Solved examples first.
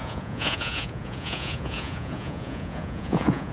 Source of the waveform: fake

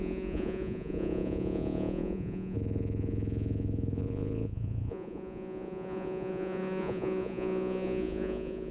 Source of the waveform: fake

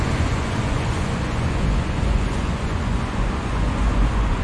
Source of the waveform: fake